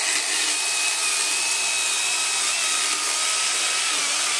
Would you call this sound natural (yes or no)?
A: yes